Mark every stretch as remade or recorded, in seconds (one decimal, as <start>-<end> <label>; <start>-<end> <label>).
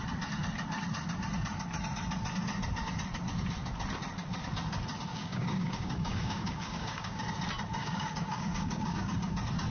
0.0-5.1 recorded; 5.1-7.2 remade; 7.2-7.8 recorded; 7.8-9.1 remade; 9.1-9.7 recorded